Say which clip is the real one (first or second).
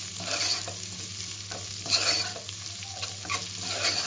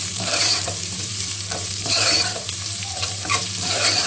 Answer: first